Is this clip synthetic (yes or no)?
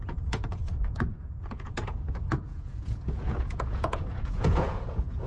yes